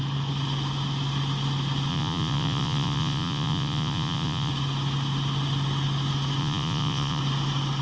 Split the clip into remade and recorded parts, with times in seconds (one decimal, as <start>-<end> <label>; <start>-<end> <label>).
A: 0.0-1.9 recorded; 1.9-4.5 remade; 4.5-6.4 recorded; 6.4-7.2 remade; 7.2-7.8 recorded